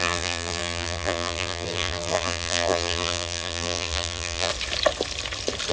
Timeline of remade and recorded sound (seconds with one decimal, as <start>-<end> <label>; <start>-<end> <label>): 0.0-4.5 remade; 4.5-5.7 recorded